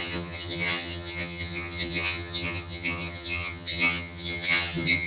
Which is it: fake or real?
fake